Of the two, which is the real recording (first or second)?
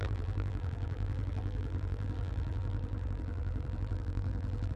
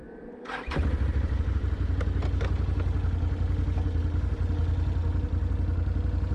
second